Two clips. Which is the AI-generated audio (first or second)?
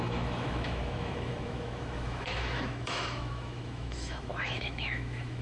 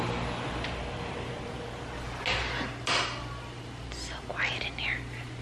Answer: first